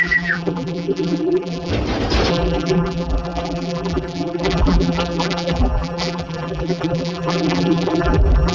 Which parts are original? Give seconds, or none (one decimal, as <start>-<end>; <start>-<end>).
1.7-2.3